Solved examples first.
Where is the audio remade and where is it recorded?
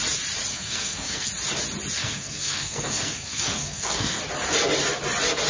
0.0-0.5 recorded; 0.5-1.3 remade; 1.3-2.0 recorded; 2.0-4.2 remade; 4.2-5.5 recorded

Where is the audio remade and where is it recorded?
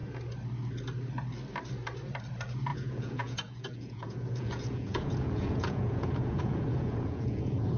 0.0-2.7 recorded; 2.7-7.8 remade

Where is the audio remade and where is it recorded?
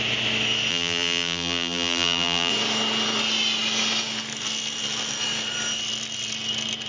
0.0-0.7 recorded; 0.7-2.5 remade; 2.5-6.9 recorded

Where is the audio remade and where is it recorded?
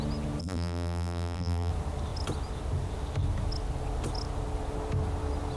0.0-0.4 recorded; 0.4-1.7 remade; 1.7-5.6 recorded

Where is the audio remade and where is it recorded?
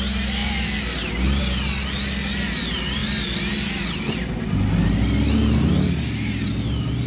0.0-7.1 recorded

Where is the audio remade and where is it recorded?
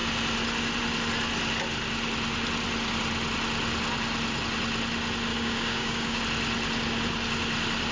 0.0-5.3 recorded; 5.3-6.2 remade; 6.2-7.9 recorded